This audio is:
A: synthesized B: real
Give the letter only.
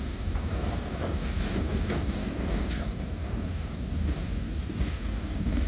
A